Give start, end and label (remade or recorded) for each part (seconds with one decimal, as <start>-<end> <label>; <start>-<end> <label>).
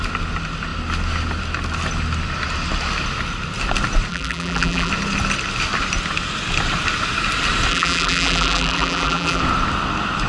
0.0-4.1 recorded; 4.1-4.9 remade; 4.9-7.7 recorded; 7.7-9.4 remade; 9.4-10.3 recorded